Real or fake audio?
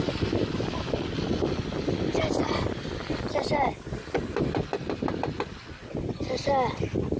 real